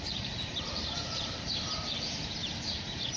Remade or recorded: remade